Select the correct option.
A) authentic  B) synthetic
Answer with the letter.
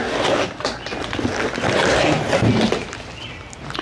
A